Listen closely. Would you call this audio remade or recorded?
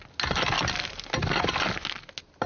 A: recorded